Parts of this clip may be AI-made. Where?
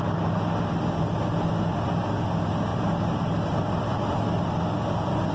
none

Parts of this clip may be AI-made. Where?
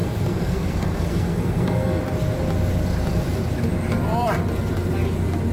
0.0-2.0 (codec, SNAC)